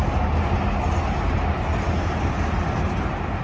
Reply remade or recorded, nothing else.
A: recorded